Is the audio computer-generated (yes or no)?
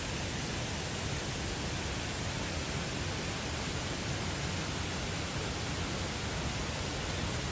no